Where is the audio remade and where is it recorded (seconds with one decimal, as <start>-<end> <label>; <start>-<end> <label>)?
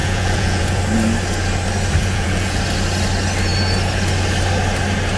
0.0-0.8 remade; 0.8-2.0 recorded; 2.0-2.6 remade; 2.6-5.2 recorded